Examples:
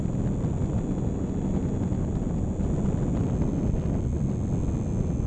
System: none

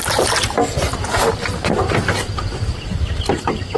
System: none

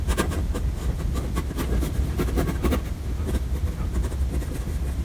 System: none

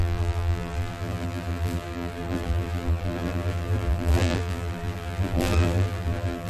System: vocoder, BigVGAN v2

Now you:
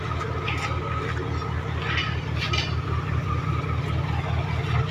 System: none